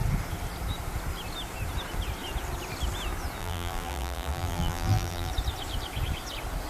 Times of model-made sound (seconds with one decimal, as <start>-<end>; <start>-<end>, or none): 3.4-5.3